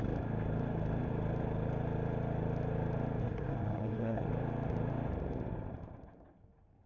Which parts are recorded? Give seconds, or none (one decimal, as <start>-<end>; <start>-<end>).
0.0-3.2; 4.3-6.9